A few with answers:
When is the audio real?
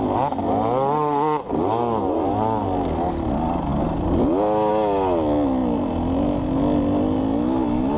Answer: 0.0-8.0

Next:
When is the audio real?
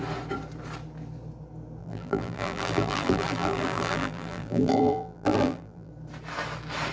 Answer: 0.0-1.8; 5.9-6.9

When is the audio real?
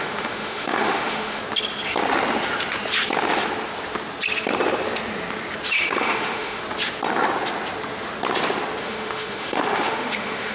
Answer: 1.4-6.0; 6.6-8.8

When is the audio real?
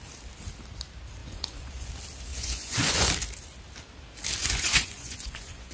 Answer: 0.0-1.2; 1.9-2.3; 3.1-4.4